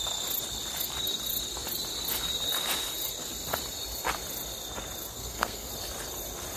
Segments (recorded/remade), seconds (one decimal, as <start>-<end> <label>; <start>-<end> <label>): 0.0-5.1 recorded; 5.1-5.7 remade; 5.7-6.6 recorded